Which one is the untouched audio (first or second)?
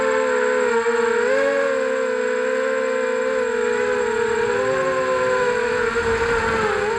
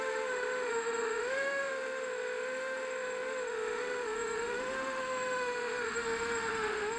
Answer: first